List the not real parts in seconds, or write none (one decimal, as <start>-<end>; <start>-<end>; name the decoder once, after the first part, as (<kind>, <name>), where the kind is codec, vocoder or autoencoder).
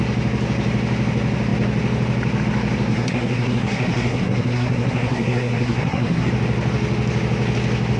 2.9-6.3 (codec, SNAC)